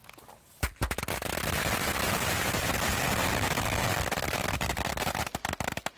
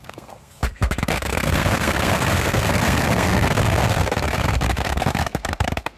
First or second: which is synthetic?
second